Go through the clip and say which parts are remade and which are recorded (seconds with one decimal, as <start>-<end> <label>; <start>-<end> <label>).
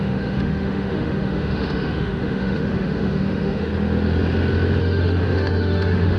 0.0-3.7 remade; 3.7-4.8 recorded; 4.8-6.2 remade